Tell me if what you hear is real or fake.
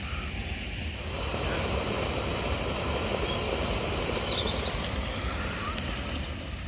real